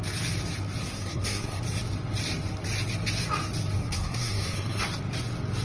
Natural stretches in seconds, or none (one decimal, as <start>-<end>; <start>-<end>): 0.0-0.8; 1.6-3.8; 4.8-5.6